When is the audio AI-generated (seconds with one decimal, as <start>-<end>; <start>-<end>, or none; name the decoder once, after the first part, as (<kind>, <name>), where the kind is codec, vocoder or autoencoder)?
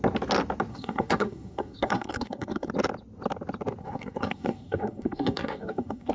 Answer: 0.7-2.7 (codec, SNAC); 3.8-6.1